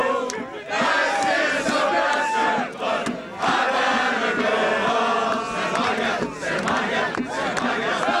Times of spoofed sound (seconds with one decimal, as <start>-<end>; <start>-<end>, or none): none